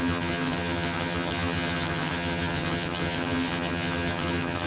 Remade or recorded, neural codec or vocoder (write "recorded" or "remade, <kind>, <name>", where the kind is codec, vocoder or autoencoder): remade, vocoder, HiFi-GAN